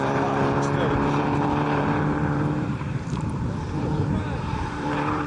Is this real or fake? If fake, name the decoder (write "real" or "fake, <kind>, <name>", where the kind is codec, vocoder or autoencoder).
fake, vocoder, BigVGAN v2